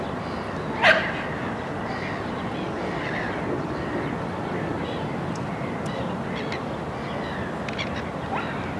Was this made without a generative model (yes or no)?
yes